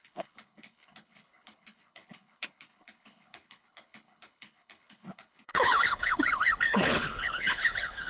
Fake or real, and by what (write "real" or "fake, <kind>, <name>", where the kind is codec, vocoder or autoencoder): fake, codec, HILCodec